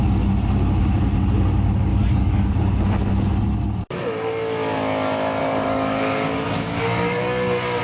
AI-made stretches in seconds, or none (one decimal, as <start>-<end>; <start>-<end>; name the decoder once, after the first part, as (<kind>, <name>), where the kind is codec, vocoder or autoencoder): 1.9-2.5 (codec, DAC); 5.4-7.8

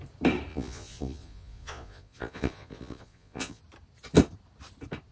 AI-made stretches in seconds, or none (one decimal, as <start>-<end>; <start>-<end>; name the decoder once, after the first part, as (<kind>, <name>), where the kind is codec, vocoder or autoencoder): 0.5-3.6 (vocoder, Vocos)